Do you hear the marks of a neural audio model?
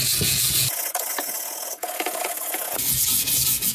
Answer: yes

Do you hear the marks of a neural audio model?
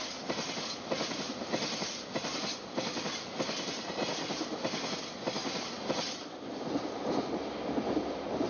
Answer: no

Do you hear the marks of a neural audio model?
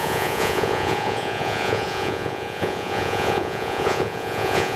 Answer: yes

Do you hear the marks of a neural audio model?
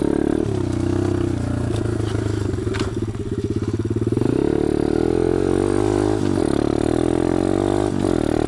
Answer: no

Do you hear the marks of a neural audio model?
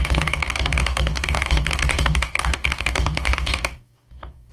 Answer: yes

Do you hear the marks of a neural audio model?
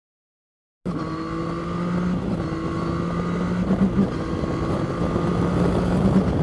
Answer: no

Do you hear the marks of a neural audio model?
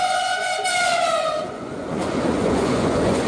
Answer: yes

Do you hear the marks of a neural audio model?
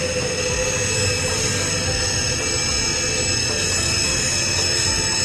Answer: no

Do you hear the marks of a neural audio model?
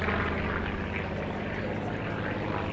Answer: no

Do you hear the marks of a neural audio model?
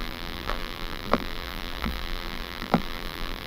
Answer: yes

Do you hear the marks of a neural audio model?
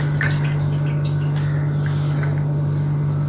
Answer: no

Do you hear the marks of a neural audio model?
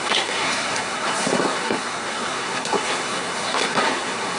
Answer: yes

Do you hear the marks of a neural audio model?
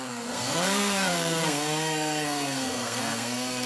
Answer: yes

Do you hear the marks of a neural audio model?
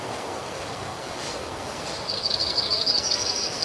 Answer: yes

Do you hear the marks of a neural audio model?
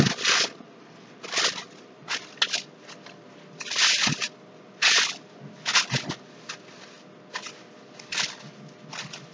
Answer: no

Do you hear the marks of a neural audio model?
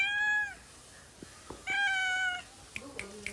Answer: no